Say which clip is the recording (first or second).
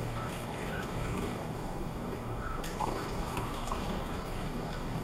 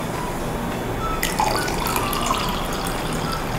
second